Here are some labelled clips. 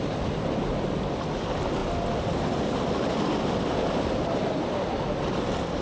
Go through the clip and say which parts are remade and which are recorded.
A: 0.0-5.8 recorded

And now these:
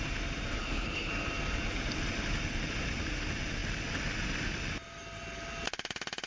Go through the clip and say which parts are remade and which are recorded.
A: 0.0-0.6 recorded; 0.6-1.1 remade; 1.1-6.3 recorded

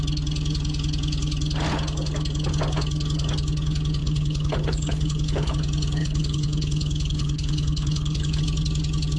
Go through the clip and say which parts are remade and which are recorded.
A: 0.0-4.0 recorded; 4.0-5.5 remade; 5.5-6.0 recorded; 6.0-8.4 remade; 8.4-9.2 recorded

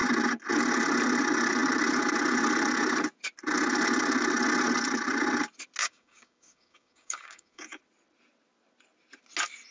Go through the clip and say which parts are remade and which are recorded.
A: 0.0-5.8 recorded; 5.8-7.8 remade; 7.8-9.7 recorded

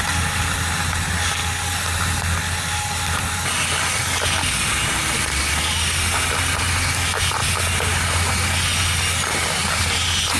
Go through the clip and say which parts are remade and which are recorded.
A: 0.0-10.4 recorded

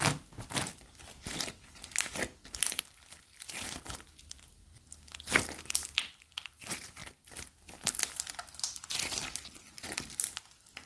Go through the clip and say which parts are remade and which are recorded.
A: 0.0-10.9 recorded

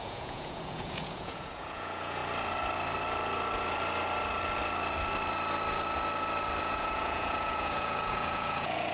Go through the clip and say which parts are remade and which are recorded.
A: 0.0-2.2 remade; 2.2-6.6 recorded; 6.6-8.9 remade